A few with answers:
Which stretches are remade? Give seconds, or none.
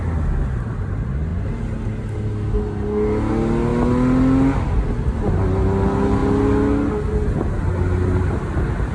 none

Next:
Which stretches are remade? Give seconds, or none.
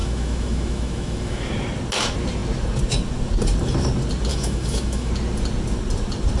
0.0-1.5 (autoencoder, DAC-VAE); 4.3-5.1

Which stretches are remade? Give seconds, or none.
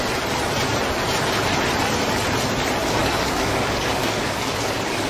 2.8-5.1 (codec, DAC)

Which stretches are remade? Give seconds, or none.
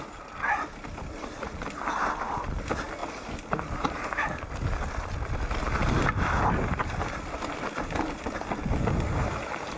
3.0-3.7 (vocoder, BigVGAN v2)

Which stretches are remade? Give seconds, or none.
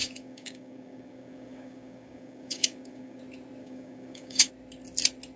0.0-3.2 (codec, DAC); 3.6-4.5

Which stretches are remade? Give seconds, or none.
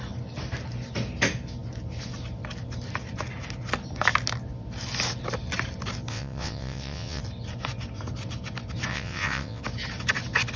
6.1-7.2 (vocoder, WaveNeXt); 8.9-9.6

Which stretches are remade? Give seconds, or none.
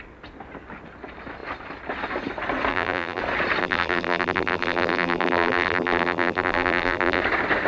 2.7-3.2 (vocoder, BigVGAN v2); 3.6-7.2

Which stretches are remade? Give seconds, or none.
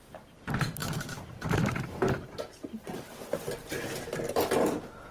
0.8-3.8 (vocoder, BigVGAN v2)